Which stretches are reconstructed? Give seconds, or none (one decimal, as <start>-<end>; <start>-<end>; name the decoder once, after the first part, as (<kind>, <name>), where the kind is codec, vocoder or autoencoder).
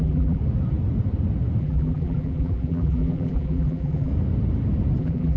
0.0-0.4 (vocoder, BigVGAN v2); 1.6-4.1; 5.0-5.4